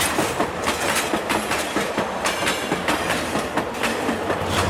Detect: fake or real real